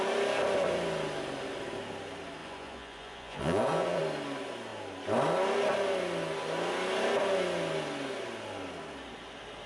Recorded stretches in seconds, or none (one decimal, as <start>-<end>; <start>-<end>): 0.0-2.4; 4.0-9.7